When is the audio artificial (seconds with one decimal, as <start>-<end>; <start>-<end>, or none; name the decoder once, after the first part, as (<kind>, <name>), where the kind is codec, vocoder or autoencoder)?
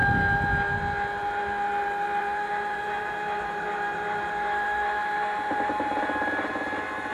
2.2-6.5 (vocoder, BigVGAN v2)